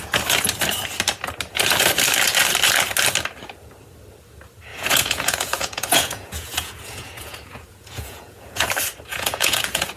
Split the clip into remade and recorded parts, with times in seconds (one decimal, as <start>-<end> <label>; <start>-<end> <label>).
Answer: 0.0-4.7 recorded; 4.7-8.7 remade; 8.7-9.1 recorded; 9.1-10.0 remade